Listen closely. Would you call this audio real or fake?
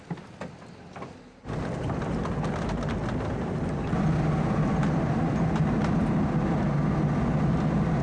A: real